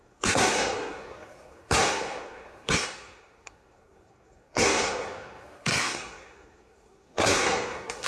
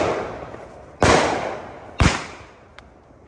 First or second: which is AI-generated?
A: first